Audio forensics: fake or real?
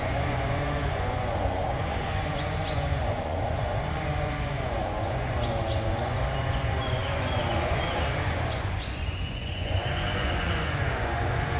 fake